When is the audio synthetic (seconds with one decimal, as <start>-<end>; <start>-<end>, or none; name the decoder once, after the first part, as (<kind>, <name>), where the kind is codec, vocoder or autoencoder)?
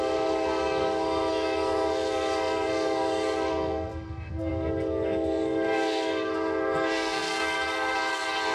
0.0-8.5 (codec, SNAC)